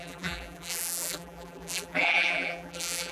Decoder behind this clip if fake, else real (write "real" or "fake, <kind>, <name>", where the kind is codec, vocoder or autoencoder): fake, vocoder, BigVGAN v2